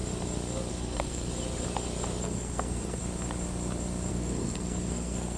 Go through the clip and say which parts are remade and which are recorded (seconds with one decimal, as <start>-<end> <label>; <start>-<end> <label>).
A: 0.0-0.7 recorded; 0.7-1.3 remade; 1.3-2.2 recorded; 2.2-3.0 remade; 3.0-4.1 recorded; 4.1-5.4 remade